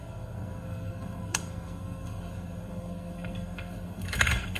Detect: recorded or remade remade